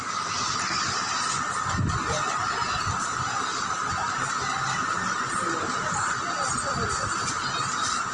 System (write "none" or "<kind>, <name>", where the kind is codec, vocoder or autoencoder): none